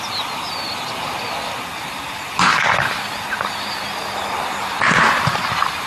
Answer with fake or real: real